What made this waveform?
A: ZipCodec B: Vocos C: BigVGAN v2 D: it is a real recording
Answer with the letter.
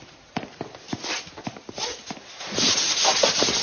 C